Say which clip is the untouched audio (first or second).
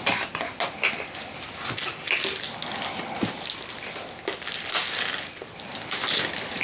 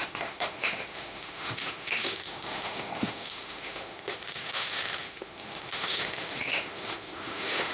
first